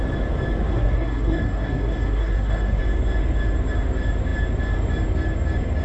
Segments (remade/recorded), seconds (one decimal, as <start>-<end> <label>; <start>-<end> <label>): 0.0-0.7 recorded; 0.7-2.8 remade; 2.8-5.8 recorded